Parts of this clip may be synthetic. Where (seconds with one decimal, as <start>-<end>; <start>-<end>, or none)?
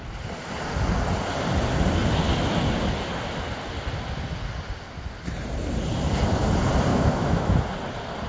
6.9-7.6